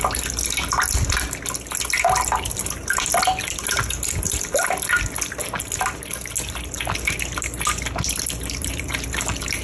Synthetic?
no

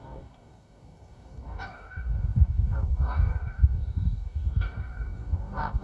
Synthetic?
yes